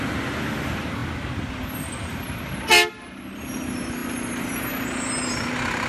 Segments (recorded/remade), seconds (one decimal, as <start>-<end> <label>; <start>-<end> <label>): 0.0-5.9 recorded

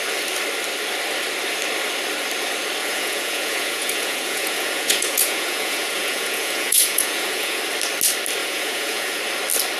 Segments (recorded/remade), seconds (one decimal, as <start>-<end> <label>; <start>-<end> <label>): 0.0-2.8 recorded; 2.8-7.6 remade; 7.6-8.4 recorded; 8.4-9.2 remade; 9.2-9.8 recorded

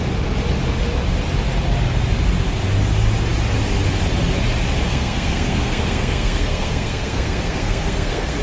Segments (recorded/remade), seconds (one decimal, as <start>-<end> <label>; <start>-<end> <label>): 0.0-4.9 recorded; 4.9-8.4 remade

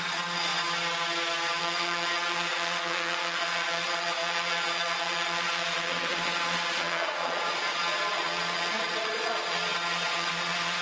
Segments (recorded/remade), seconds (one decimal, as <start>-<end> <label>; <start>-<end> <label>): 0.0-0.5 remade; 0.5-1.6 recorded; 1.6-10.8 remade

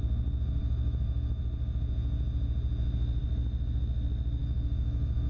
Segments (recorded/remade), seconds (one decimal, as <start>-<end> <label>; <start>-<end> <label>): 0.0-0.6 recorded; 0.6-1.4 remade; 1.4-4.4 recorded; 4.4-5.3 remade

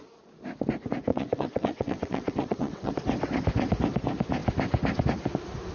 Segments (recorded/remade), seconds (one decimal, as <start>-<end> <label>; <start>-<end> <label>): 0.0-1.1 recorded; 1.1-2.9 remade; 2.9-5.7 recorded

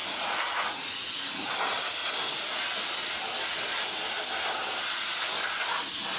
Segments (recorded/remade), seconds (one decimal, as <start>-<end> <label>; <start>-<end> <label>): 0.0-1.2 remade; 1.2-6.2 recorded

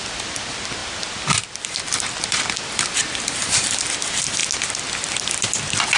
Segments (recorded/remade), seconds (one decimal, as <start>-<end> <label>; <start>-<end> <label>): 0.0-6.0 recorded